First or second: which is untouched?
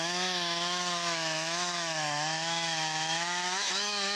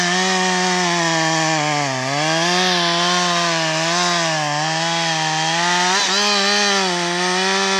second